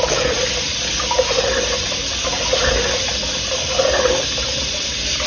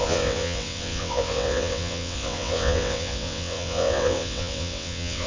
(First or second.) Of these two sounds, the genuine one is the first